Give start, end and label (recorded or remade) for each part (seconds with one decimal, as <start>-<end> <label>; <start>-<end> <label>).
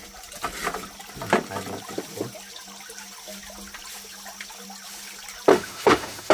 0.0-5.5 recorded; 5.5-6.3 remade